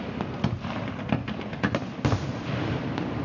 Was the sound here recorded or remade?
recorded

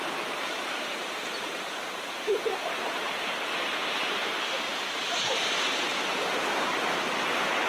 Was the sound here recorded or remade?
remade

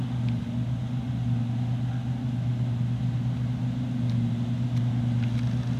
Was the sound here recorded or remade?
recorded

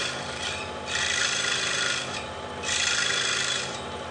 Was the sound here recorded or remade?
remade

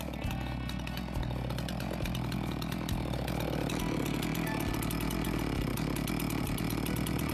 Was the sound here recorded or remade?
recorded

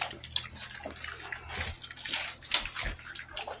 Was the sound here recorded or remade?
recorded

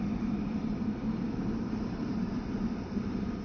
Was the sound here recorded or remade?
remade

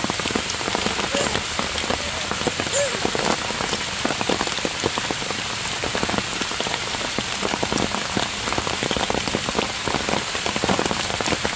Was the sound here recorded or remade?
remade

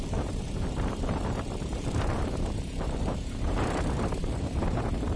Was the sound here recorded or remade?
remade